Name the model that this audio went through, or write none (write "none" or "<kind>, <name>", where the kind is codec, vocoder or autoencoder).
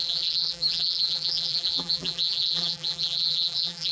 vocoder, BigVGAN v2